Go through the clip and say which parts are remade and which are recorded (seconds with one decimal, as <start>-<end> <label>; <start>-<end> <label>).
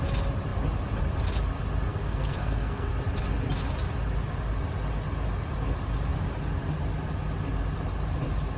0.0-1.9 recorded; 1.9-2.9 remade; 2.9-8.6 recorded